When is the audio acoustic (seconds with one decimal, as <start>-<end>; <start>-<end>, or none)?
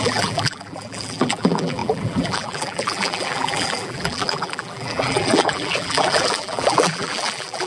none